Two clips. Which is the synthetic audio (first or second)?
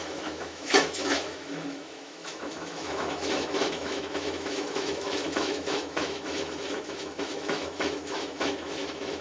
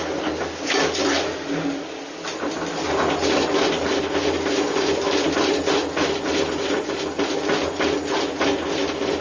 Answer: first